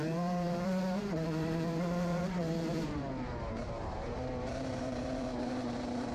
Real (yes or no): no